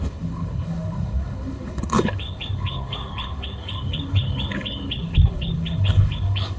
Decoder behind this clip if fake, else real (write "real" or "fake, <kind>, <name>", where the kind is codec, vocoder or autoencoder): fake, codec, HILCodec